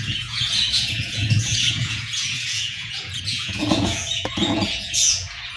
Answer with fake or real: fake